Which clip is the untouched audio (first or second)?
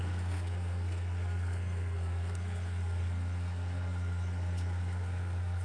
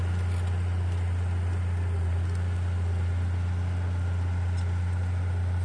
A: second